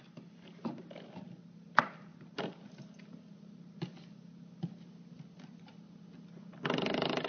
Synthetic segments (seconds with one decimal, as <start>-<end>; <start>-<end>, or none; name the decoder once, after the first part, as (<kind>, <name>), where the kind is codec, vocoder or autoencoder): none